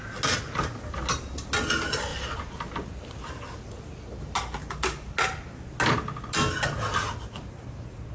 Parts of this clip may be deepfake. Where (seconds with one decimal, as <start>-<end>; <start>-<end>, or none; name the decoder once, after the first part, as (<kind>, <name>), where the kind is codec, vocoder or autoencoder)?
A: none